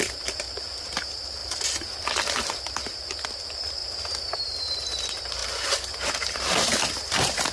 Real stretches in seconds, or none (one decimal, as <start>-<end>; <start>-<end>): 3.8-4.5; 5.4-6.1